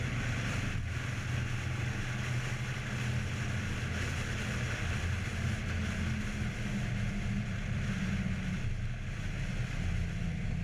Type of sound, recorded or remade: recorded